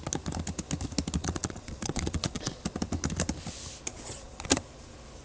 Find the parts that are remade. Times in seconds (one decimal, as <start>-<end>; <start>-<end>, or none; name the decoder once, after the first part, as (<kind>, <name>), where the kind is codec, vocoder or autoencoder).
1.2-2.6 (vocoder, Vocos); 3.9-4.5